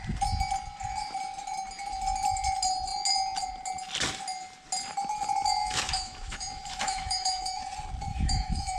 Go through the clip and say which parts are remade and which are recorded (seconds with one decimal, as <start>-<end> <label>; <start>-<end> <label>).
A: 0.0-5.6 recorded; 5.6-7.6 remade; 7.6-8.1 recorded; 8.1-8.8 remade